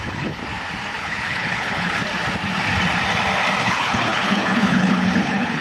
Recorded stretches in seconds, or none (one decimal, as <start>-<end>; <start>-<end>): 0.4-1.0; 2.0-3.6